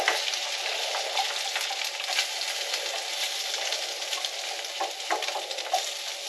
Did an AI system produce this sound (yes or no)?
no